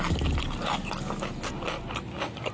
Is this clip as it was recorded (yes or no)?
yes